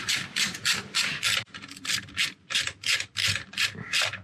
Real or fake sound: real